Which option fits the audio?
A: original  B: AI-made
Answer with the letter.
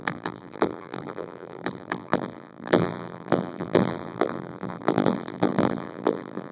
B